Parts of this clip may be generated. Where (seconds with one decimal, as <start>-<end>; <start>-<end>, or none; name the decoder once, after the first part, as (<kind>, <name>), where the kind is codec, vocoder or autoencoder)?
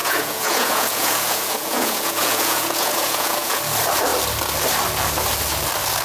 0.0-3.6 (vocoder, Vocos)